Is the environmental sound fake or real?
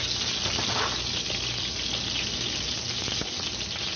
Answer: real